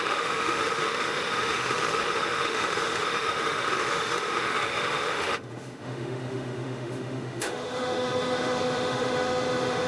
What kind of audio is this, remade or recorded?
remade